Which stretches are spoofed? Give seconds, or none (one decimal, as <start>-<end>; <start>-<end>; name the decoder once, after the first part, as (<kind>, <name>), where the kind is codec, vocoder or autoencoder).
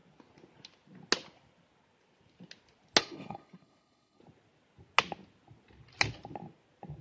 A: 3.0-4.2 (codec, HILCodec)